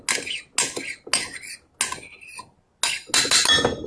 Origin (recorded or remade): recorded